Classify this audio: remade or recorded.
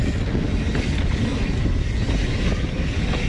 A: recorded